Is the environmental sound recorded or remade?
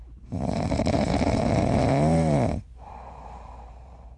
remade